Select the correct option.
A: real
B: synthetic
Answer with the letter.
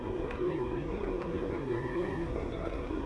B